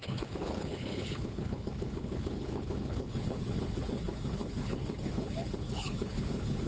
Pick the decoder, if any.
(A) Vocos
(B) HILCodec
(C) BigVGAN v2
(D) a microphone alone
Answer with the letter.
B